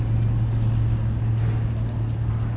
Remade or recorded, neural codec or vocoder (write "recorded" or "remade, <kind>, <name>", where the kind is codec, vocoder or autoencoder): recorded